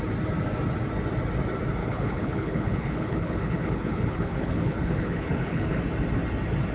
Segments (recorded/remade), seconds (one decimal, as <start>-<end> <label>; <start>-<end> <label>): 0.0-1.8 recorded; 1.8-5.8 remade; 5.8-6.7 recorded